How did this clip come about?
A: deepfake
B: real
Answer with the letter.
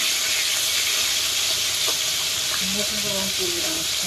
B